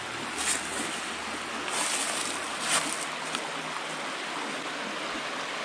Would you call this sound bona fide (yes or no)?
yes